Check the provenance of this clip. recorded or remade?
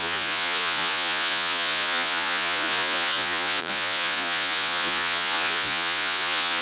remade